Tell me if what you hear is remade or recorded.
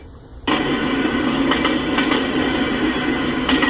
recorded